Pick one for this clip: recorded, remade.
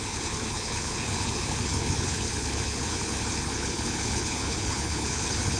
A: remade